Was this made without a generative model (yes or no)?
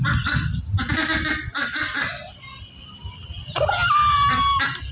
yes